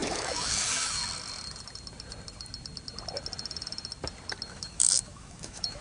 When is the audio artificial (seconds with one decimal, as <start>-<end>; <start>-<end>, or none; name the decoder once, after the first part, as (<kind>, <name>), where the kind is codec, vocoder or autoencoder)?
0.0-1.0 (autoencoder, DAC-VAE); 4.5-5.8